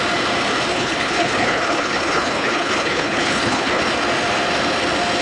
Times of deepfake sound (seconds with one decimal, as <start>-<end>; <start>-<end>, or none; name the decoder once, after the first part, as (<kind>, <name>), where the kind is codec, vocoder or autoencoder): 0.7-3.8 (codec, HILCodec)